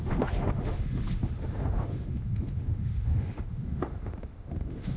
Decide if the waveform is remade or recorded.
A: remade